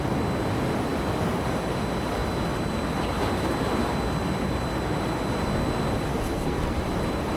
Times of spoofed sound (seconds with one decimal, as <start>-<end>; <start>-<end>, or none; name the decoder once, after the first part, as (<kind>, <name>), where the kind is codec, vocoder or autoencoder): 6.1-6.8 (codec, SNAC)